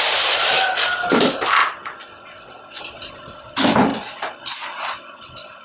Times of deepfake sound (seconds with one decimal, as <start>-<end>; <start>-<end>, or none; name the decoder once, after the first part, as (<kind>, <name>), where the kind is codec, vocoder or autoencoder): none